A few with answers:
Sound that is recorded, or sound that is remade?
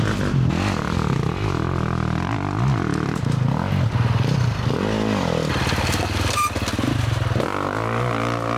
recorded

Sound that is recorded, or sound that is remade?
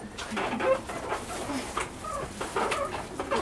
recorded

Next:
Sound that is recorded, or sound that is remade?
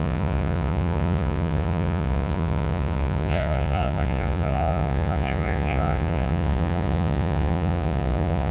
remade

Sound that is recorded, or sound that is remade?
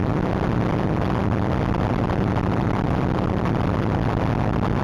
recorded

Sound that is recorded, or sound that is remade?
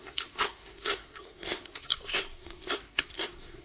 remade